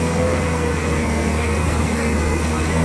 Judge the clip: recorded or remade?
remade